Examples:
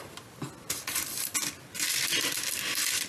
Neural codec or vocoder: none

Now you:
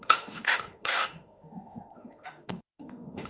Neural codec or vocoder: autoencoder, DAC-VAE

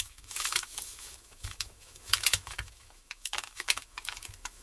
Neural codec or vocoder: autoencoder, DAC-VAE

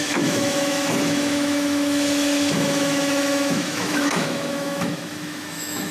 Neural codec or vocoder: autoencoder, DAC-VAE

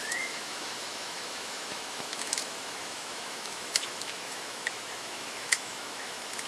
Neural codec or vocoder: autoencoder, DAC-VAE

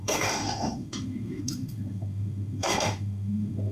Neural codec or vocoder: autoencoder, DAC-VAE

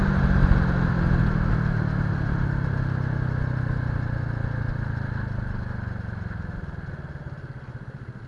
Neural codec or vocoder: none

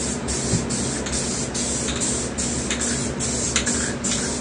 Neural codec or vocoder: none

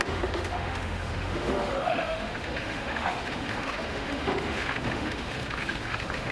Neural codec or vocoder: autoencoder, DAC-VAE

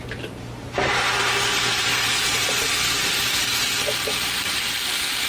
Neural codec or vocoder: none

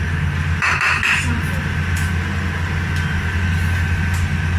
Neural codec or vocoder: none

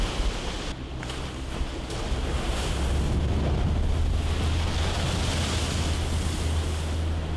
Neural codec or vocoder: none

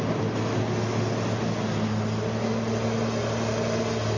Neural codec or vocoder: none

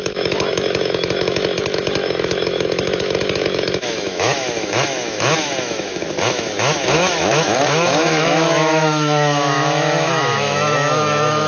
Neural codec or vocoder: autoencoder, DAC-VAE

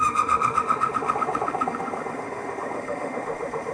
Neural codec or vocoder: autoencoder, DAC-VAE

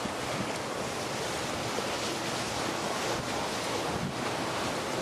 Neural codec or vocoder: none